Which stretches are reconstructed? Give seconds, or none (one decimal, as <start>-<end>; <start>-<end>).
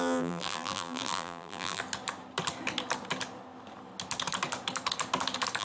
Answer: 0.0-1.8